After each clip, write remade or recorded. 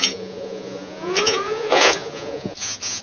remade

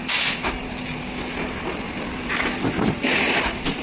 recorded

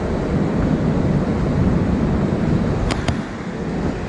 recorded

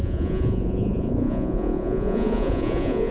remade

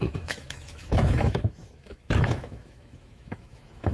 remade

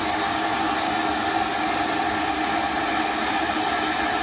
recorded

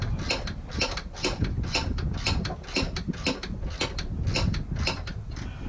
recorded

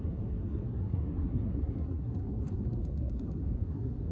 remade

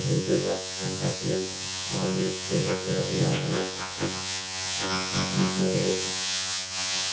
remade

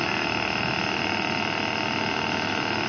recorded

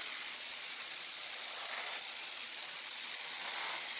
remade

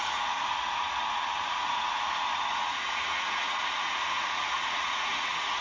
remade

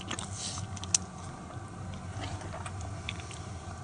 recorded